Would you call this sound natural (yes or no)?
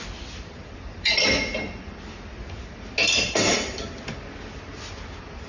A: yes